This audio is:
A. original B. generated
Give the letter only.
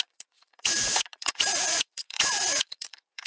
B